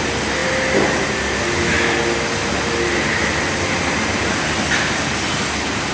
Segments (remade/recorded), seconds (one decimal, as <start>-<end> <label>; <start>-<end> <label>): 0.0-5.9 recorded